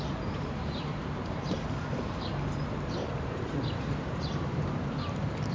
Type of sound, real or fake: fake